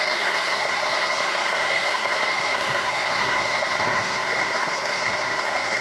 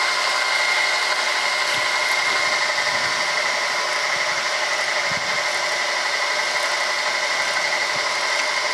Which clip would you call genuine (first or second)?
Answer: second